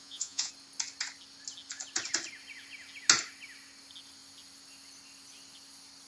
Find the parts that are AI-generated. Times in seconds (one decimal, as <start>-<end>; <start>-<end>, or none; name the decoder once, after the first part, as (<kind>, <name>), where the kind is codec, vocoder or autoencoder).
0.0-0.5 (vocoder, Vocos)